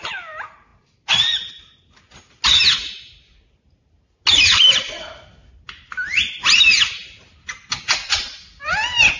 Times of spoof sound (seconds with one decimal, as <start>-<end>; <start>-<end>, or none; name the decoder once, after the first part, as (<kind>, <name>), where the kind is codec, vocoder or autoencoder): none